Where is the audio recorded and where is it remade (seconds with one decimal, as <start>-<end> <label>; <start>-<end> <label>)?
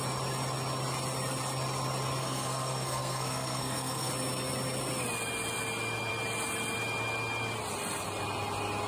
0.0-2.2 recorded; 2.2-4.1 remade; 4.1-8.9 recorded